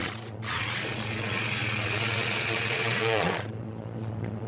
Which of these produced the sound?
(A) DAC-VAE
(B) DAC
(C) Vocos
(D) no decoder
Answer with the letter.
C